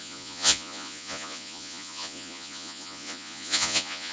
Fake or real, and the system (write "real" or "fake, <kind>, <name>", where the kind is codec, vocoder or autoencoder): fake, vocoder, Vocos